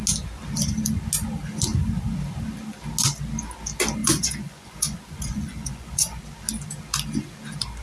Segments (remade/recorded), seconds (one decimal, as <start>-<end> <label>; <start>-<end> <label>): 0.0-4.0 recorded; 4.0-6.2 remade; 6.2-7.8 recorded